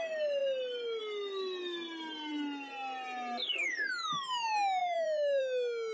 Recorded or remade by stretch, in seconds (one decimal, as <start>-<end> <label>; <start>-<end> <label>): 0.0-4.8 recorded; 4.8-5.4 remade; 5.4-5.9 recorded